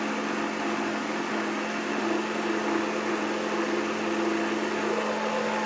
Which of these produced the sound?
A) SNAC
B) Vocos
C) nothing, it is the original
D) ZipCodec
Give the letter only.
C